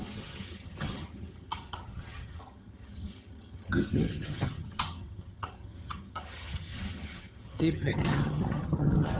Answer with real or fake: fake